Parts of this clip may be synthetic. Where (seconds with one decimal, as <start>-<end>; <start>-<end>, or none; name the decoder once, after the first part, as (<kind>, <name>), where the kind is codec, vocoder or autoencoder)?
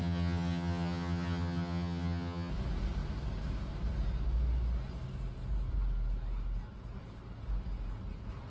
0.0-2.5 (vocoder, HiFi-GAN)